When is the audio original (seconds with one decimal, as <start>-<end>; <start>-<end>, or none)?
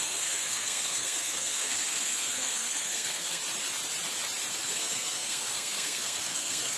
3.4-4.5